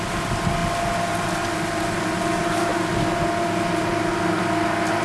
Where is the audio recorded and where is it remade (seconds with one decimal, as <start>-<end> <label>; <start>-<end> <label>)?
0.0-5.0 recorded